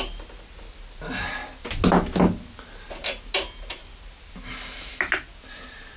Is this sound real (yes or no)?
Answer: yes